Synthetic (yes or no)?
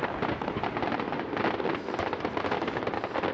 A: no